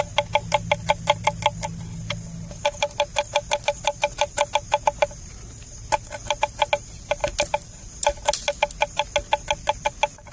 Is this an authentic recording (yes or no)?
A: yes